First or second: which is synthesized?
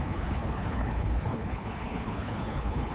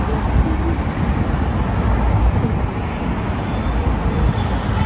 first